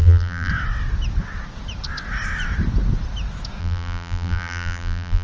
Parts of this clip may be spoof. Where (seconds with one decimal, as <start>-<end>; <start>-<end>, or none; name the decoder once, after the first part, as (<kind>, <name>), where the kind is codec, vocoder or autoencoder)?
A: 0.0-0.5 (vocoder, BigVGAN v2); 3.6-5.2